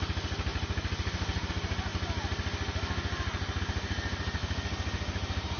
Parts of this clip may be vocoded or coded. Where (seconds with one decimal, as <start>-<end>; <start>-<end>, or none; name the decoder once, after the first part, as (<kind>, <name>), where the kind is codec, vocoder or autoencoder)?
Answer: none